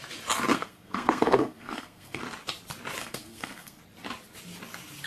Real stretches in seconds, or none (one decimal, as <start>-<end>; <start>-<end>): 0.0-0.5; 2.2-3.0; 3.8-5.1